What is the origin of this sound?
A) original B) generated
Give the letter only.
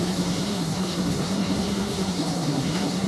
B